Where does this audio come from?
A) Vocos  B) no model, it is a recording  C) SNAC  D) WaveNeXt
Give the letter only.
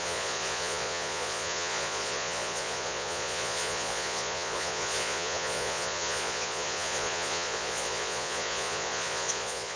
A